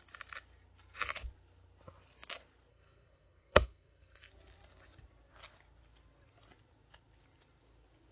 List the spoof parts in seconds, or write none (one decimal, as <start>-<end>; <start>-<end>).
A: 2.7-4.3